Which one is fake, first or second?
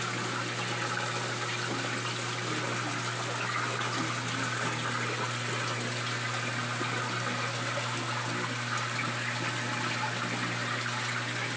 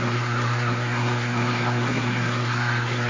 second